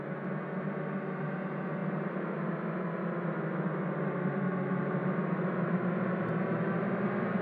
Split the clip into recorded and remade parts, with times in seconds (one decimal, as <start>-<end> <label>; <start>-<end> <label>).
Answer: 0.0-7.4 recorded

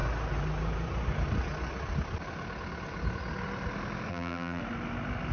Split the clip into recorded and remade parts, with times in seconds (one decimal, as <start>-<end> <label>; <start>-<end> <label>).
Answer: 0.0-4.1 recorded; 4.1-4.6 remade; 4.6-5.3 recorded

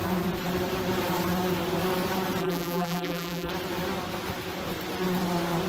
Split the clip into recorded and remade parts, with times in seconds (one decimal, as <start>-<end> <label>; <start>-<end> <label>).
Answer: 0.0-2.4 recorded; 2.4-3.5 remade; 3.5-5.7 recorded

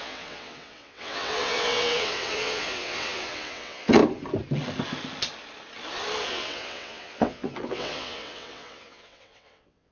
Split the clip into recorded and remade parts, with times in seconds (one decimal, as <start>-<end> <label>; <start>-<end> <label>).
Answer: 0.0-4.0 remade; 4.0-6.3 recorded; 6.3-9.9 remade

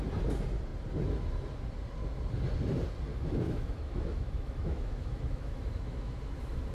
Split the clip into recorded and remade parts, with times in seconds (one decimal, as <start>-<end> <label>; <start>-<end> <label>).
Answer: 0.0-3.1 recorded; 3.1-6.7 remade

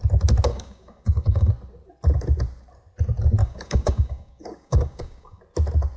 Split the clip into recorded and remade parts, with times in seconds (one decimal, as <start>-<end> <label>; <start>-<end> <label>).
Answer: 0.0-0.5 recorded; 0.5-1.5 remade; 1.5-3.4 recorded; 3.4-5.4 remade; 5.4-6.0 recorded

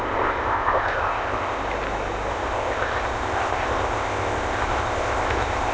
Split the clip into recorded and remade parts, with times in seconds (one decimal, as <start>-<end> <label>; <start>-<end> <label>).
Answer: 0.0-1.6 remade; 1.6-2.3 recorded; 2.3-5.7 remade